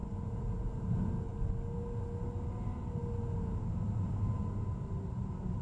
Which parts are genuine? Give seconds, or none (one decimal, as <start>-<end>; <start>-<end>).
0.0-5.6